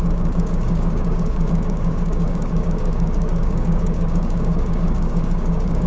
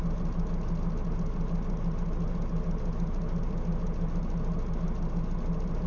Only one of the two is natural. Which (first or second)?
second